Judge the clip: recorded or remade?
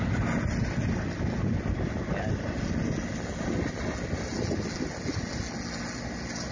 recorded